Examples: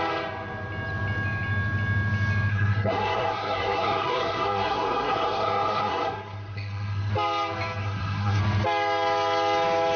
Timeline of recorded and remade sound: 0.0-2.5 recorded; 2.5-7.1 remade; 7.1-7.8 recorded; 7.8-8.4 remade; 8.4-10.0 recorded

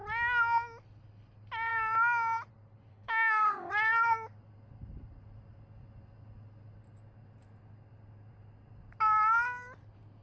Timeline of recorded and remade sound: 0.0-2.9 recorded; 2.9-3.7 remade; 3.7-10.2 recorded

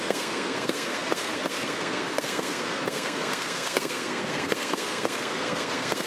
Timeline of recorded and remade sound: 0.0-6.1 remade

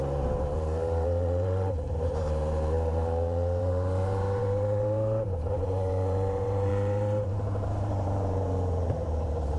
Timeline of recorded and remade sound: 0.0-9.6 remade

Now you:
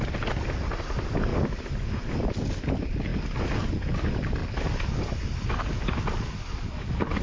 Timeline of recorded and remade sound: 0.0-7.2 recorded

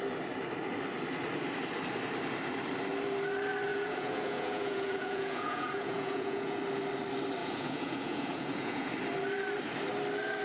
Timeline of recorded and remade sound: 0.0-3.7 recorded; 3.7-6.6 remade; 6.6-7.4 recorded; 7.4-8.9 remade; 8.9-10.4 recorded

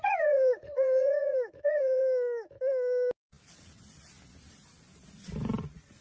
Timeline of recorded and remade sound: 0.0-2.0 remade; 2.0-5.6 recorded; 5.6-6.0 remade

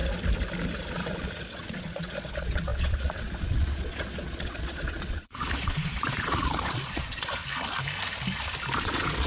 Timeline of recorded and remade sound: 0.0-0.9 recorded; 0.9-7.4 remade; 7.4-8.8 recorded; 8.8-9.3 remade